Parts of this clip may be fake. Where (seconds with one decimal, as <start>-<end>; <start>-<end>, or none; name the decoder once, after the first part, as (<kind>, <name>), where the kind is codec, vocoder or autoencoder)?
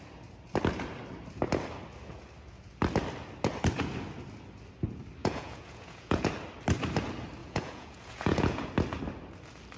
5.2-6.3 (vocoder, Vocos); 7.4-8.7